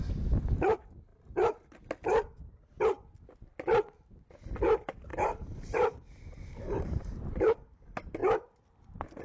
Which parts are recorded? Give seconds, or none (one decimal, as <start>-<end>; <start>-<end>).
0.0-5.1; 7.5-8.2